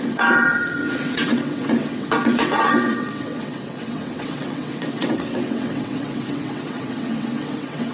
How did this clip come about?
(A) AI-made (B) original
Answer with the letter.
A